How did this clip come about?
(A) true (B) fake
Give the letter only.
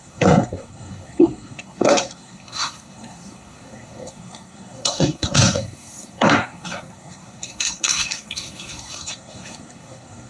B